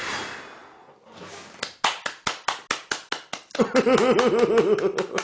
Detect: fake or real real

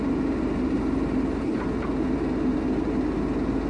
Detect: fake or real real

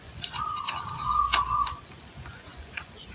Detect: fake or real fake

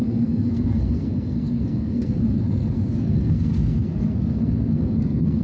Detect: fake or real fake